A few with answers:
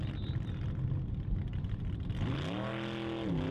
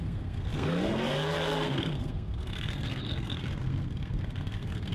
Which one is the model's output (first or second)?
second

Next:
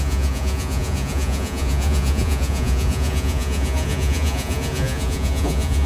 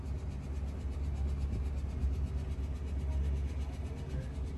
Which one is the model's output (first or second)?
first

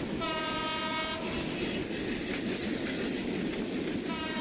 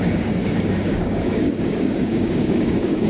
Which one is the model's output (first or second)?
second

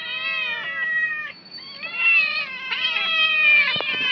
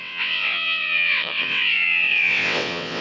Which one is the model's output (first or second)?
second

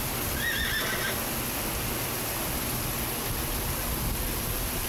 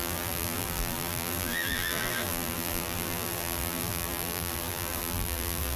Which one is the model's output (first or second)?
second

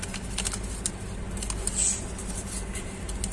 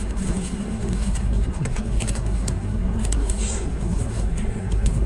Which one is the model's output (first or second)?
second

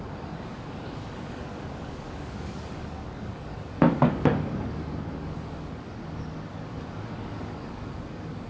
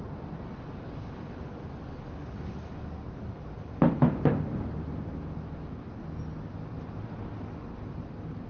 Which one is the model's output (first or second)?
first